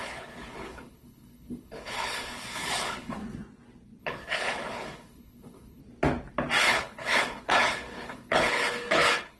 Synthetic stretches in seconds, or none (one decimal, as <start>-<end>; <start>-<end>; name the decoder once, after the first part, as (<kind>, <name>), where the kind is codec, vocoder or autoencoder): 0.0-3.2 (codec, HILCodec); 4.0-5.8; 6.6-9.4